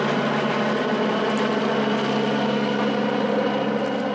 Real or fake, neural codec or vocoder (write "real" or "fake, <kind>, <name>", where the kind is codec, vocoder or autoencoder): real